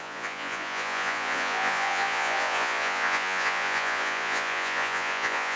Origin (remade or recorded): remade